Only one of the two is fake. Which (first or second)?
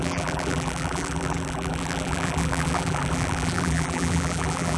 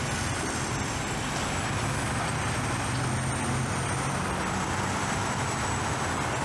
first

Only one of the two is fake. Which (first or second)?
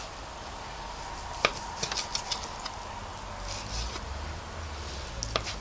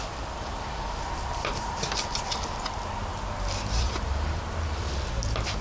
second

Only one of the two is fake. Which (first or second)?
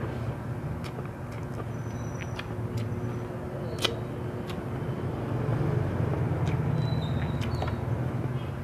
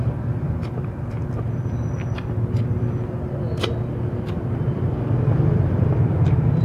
second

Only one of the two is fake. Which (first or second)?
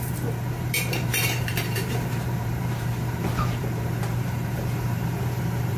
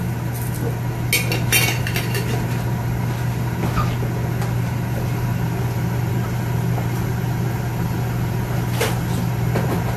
first